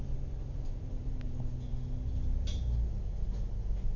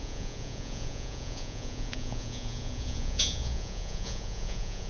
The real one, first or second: first